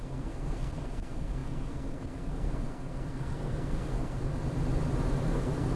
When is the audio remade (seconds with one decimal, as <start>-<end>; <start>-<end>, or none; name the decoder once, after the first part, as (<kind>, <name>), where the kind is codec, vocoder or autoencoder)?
0.0-4.3 (codec, SNAC); 5.2-5.8